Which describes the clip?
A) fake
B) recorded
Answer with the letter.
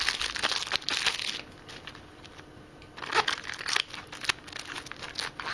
B